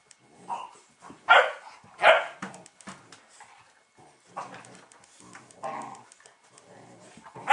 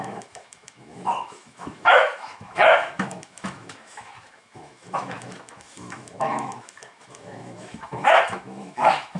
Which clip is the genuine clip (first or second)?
first